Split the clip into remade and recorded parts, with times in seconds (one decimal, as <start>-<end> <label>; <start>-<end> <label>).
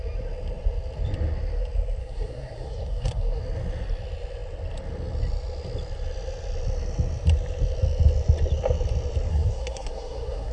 0.0-2.0 recorded; 2.0-3.4 remade; 3.4-9.3 recorded; 9.3-10.5 remade